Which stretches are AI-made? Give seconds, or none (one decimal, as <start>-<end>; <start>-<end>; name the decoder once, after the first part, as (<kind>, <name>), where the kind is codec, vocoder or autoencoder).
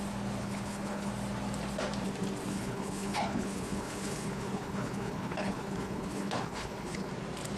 0.4-1.1 (codec, HILCodec); 2.5-7.1